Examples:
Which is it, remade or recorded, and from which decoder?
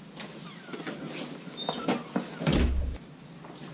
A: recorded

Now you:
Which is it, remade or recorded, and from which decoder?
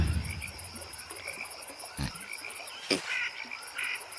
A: remade, vocoder, BigVGAN v2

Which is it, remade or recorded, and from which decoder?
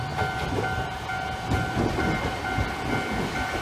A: recorded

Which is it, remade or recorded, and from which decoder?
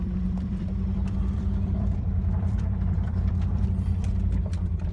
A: remade, vocoder, BigVGAN v2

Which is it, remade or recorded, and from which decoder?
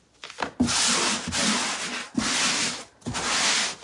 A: recorded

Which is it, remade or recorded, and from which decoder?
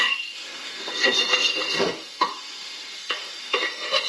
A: remade, codec, SNAC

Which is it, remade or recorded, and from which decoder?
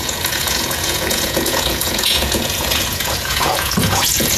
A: remade, vocoder, Vocos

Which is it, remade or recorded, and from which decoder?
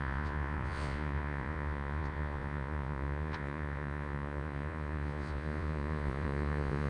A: remade, vocoder, Vocos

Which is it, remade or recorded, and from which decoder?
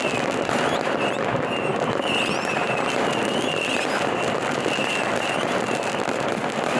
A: recorded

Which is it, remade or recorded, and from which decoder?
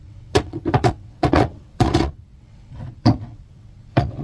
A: remade, vocoder, WaveNeXt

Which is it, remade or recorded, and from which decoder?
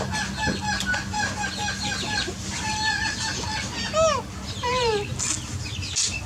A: recorded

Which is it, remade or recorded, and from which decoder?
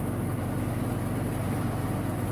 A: recorded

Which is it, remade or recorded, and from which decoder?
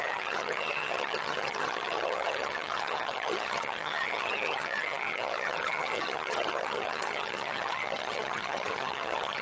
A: remade, vocoder, HiFi-GAN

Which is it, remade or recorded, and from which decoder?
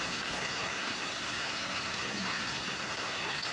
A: remade, codec, SNAC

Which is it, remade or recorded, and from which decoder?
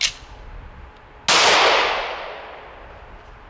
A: recorded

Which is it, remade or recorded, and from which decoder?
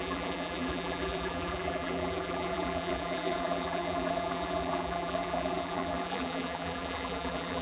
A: remade, vocoder, BigVGAN v2